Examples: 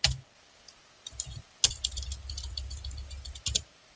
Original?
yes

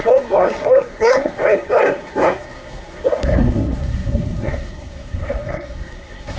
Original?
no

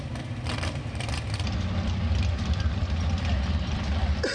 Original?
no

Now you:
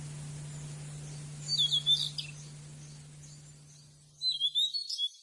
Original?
yes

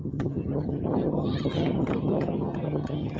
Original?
no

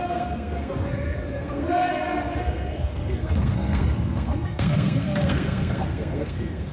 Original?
no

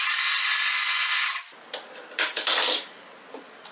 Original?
yes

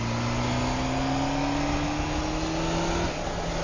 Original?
yes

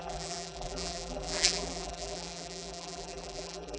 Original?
no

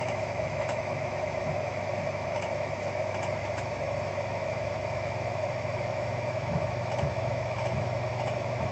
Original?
no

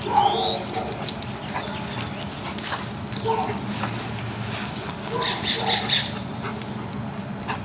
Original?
yes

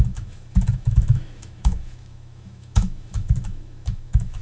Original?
no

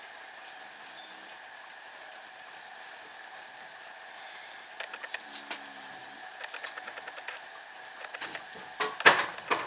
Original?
yes